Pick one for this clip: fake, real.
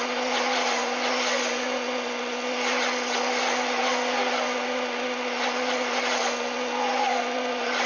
real